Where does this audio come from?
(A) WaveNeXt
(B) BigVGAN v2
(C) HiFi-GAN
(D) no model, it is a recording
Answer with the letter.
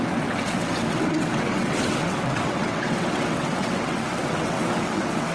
A